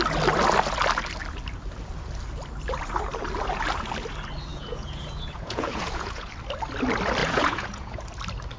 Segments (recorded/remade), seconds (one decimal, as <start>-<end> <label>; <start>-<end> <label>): 0.0-4.5 recorded; 4.5-6.3 remade; 6.3-7.2 recorded; 7.2-8.0 remade; 8.0-8.6 recorded